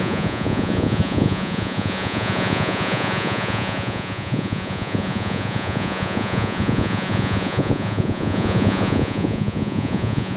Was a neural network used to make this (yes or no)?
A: yes